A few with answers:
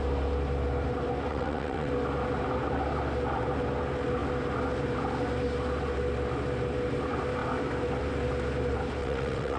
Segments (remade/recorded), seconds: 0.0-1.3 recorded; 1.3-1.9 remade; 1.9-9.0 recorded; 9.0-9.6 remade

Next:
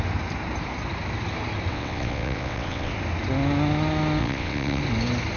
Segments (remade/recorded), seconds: 0.0-1.7 recorded; 1.7-2.9 remade; 2.9-4.2 recorded; 4.2-4.8 remade; 4.8-5.4 recorded

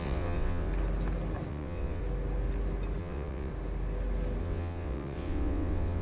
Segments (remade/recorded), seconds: 0.0-0.7 remade; 0.7-1.5 recorded; 1.5-2.0 remade; 2.0-3.0 recorded; 3.0-3.5 remade; 3.5-4.4 recorded; 4.4-6.0 remade